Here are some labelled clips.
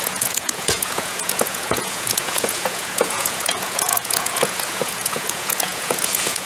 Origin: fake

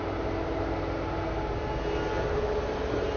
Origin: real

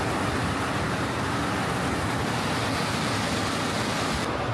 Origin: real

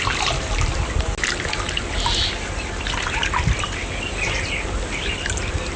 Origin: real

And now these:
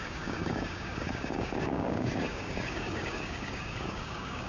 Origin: fake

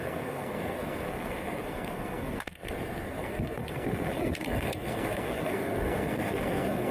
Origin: fake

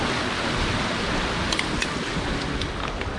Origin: real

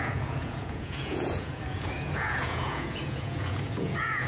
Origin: fake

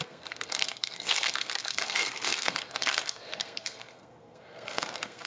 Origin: fake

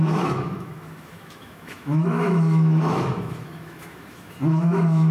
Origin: fake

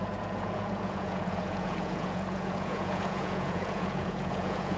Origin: fake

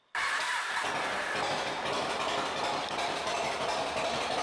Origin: fake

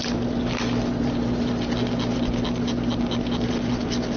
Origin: real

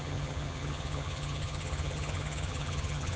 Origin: fake